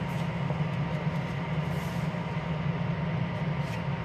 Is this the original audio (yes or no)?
yes